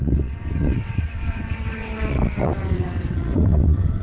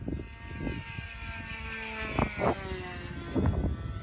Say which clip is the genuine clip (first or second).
second